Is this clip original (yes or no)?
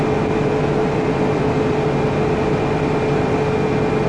yes